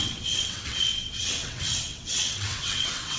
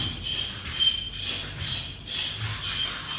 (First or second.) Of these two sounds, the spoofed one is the first